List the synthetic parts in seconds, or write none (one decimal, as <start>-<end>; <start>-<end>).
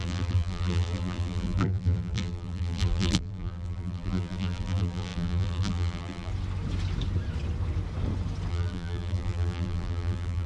0.0-6.3; 8.5-10.5